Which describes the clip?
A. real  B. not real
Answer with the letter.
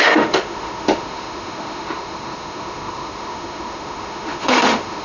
B